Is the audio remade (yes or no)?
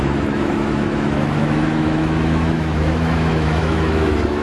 yes